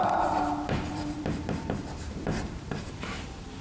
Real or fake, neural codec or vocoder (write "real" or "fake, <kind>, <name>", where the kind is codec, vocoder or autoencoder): fake, vocoder, BigVGAN v2